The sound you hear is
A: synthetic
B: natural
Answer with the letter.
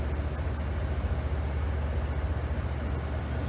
B